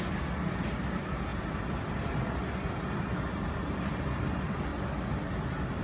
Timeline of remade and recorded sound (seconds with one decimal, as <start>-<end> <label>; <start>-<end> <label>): 0.0-5.8 recorded